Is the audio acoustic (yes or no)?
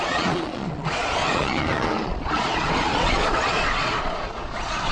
no